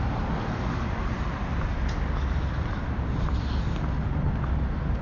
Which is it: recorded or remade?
recorded